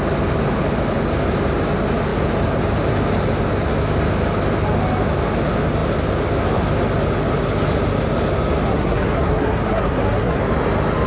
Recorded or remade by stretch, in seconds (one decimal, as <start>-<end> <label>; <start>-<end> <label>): 0.0-8.7 recorded; 8.7-10.4 remade; 10.4-11.1 recorded